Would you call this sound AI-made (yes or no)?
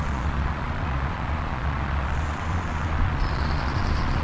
yes